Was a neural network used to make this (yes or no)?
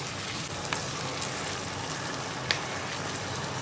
no